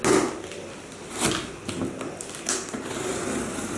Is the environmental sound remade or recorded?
recorded